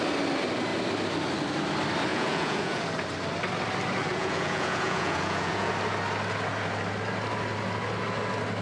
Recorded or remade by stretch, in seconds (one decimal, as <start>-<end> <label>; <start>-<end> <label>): 0.0-2.1 recorded; 2.1-2.8 remade; 2.8-4.1 recorded; 4.1-5.7 remade; 5.7-8.6 recorded